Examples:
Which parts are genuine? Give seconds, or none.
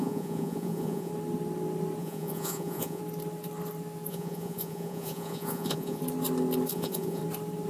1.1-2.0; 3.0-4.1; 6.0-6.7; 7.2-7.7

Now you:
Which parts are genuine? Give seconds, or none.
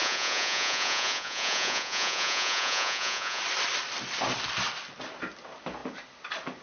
3.4-6.6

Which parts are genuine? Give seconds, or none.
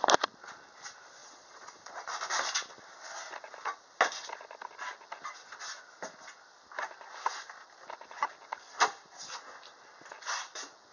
0.0-1.2; 2.1-10.9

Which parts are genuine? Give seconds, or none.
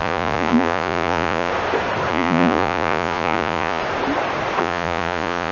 1.5-2.1; 3.8-4.6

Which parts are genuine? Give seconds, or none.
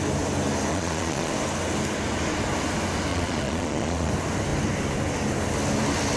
0.0-0.7; 1.3-3.1; 4.1-6.2